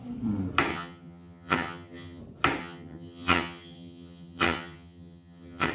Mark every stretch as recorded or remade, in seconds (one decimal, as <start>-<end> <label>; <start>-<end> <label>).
0.0-0.7 recorded; 0.7-2.2 remade; 2.2-2.6 recorded; 2.6-5.7 remade